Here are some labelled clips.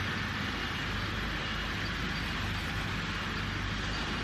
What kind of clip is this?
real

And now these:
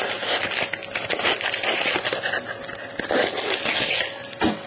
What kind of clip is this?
real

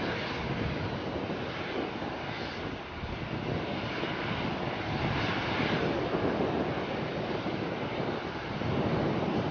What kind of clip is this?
real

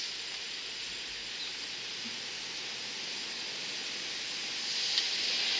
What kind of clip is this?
real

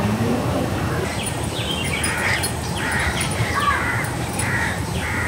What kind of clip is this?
fake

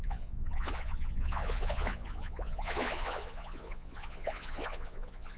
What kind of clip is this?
fake